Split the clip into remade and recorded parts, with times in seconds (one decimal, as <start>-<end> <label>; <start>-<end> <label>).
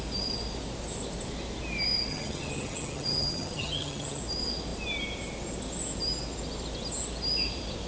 0.0-2.1 recorded; 2.1-4.2 remade; 4.2-7.9 recorded